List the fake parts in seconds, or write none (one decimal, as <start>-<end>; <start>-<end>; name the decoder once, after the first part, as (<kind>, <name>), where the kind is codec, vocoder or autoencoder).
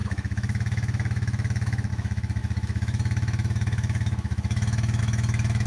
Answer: 0.0-5.7 (autoencoder, DAC-VAE)